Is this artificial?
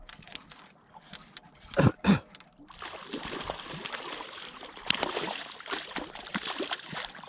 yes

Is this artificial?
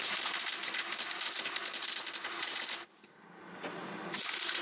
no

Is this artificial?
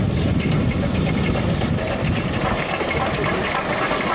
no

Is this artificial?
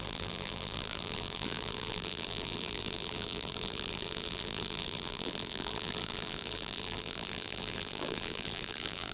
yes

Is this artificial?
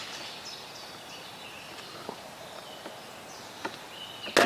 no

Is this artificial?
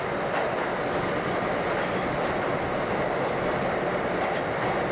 no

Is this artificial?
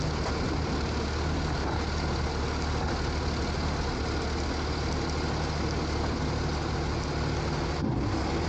no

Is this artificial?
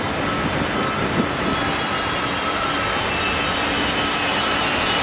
no